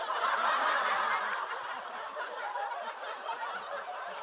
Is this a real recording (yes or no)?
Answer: yes